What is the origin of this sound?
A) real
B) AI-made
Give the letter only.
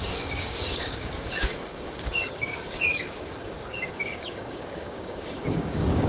B